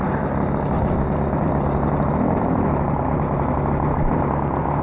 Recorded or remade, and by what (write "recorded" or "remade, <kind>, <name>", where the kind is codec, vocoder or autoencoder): recorded